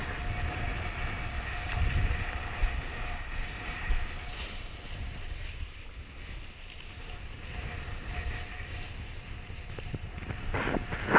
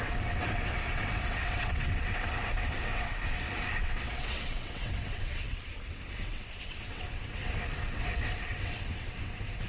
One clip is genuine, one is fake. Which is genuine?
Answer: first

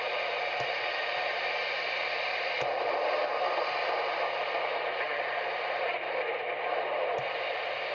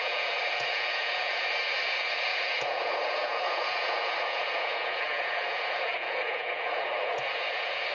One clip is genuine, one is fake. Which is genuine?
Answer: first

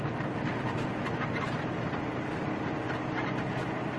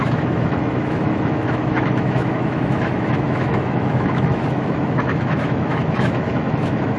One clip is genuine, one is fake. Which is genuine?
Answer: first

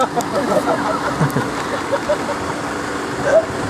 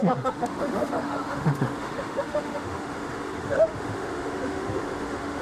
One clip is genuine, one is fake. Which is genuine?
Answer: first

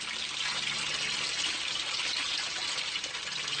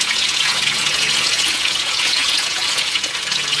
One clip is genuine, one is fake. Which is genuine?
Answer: first